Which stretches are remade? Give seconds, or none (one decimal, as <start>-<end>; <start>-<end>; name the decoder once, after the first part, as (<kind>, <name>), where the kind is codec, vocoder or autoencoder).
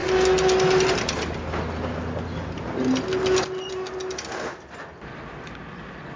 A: none